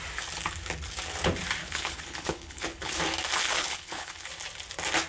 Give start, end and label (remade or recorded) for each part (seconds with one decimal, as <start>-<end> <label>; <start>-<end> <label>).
0.0-1.6 recorded; 1.6-3.0 remade; 3.0-3.4 recorded; 3.4-4.3 remade; 4.3-5.1 recorded